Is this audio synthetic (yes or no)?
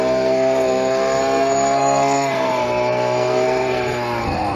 yes